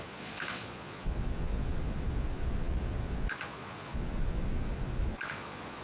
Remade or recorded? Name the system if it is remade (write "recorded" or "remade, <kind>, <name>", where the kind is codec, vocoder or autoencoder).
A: remade, vocoder, Vocos